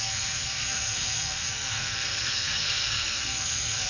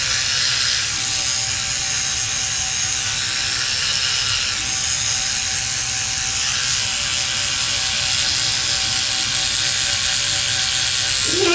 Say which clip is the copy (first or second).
first